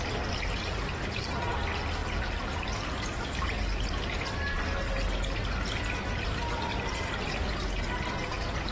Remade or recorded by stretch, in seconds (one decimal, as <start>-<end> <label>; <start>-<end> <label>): 0.0-2.0 recorded; 2.0-2.9 remade; 2.9-8.7 recorded